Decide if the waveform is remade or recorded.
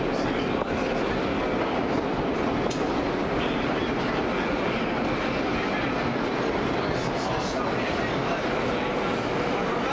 recorded